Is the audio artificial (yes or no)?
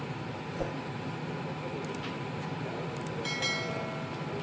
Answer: no